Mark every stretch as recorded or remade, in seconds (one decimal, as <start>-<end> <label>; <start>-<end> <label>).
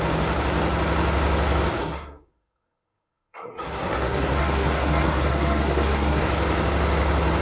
0.0-1.8 recorded; 1.8-6.2 remade; 6.2-7.4 recorded